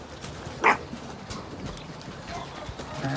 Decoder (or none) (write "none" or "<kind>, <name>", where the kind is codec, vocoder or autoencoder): none